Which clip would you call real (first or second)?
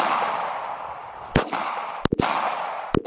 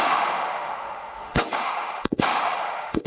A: first